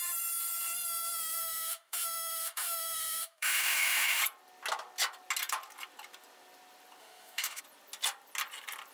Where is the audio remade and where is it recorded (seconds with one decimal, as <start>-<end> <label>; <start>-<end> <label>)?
0.0-1.4 recorded; 1.4-4.2 remade; 4.2-7.0 recorded; 7.0-7.6 remade; 7.6-8.9 recorded